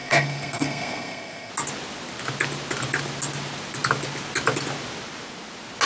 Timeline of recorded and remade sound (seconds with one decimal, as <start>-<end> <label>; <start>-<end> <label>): 0.0-1.5 remade; 1.5-5.9 recorded